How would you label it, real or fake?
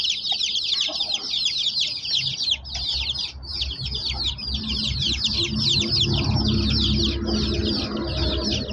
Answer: real